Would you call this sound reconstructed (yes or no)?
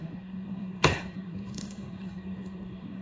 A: yes